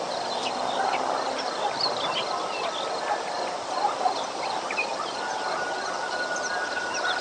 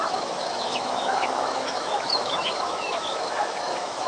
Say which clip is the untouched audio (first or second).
first